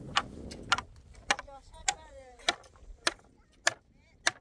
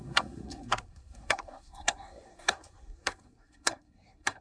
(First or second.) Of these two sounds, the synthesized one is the second